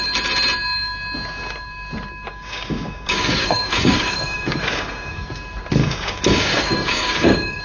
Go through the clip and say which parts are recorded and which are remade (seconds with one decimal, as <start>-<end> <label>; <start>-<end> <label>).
0.0-2.3 recorded; 2.3-5.3 remade; 5.3-5.8 recorded; 5.8-7.6 remade